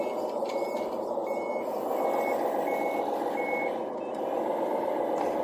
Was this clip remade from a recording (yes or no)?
no